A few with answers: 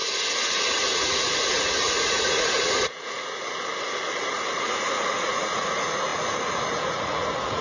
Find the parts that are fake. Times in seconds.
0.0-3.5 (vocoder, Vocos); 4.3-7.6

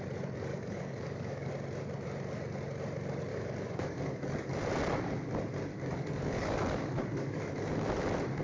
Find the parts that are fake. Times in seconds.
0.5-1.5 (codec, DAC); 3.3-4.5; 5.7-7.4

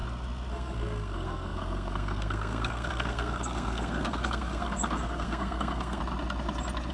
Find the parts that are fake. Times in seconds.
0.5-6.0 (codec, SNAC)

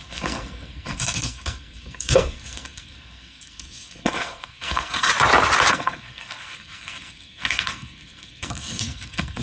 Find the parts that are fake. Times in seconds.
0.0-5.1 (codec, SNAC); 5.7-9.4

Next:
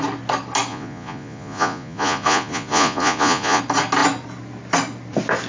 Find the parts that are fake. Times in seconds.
0.7-3.6 (vocoder, Vocos)

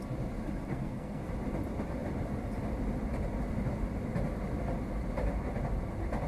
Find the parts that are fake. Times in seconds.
0.7-1.3 (codec, SNAC)